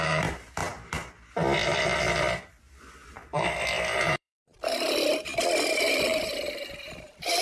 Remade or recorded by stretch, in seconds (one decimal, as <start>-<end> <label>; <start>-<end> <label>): 0.0-0.6 remade; 0.6-4.0 recorded; 4.0-5.3 remade; 5.3-5.9 recorded; 5.9-7.4 remade